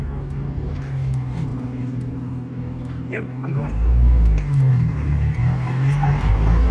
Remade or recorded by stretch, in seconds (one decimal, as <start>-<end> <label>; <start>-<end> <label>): 0.0-6.7 remade